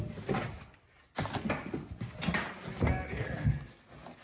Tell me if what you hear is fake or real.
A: real